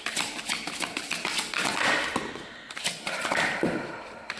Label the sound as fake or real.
real